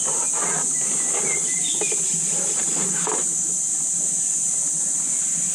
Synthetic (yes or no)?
no